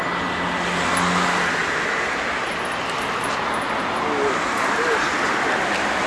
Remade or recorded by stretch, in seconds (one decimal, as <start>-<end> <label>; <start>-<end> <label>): 0.0-6.1 recorded

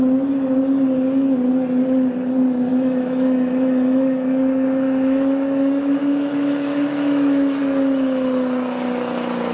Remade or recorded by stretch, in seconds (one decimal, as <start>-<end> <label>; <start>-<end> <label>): 0.0-2.7 recorded; 2.7-7.6 remade; 7.6-9.5 recorded

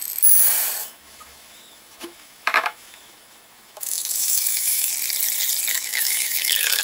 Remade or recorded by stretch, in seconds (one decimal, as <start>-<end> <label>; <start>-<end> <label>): 0.0-0.8 recorded; 0.8-4.9 remade; 4.9-5.7 recorded; 5.7-6.8 remade